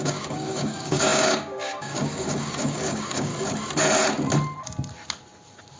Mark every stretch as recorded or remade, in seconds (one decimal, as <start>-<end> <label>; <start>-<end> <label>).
0.0-3.3 remade; 3.3-5.8 recorded